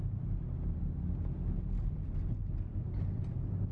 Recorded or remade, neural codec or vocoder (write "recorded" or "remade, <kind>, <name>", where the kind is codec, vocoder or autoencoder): recorded